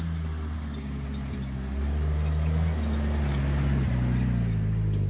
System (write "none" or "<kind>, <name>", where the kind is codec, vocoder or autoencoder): none